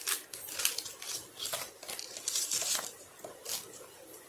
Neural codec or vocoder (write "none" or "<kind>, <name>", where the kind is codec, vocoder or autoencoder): none